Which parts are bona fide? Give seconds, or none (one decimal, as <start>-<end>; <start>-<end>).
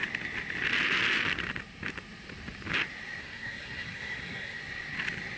0.0-3.2; 4.6-5.4